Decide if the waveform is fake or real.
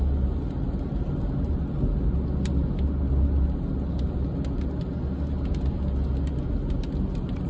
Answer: real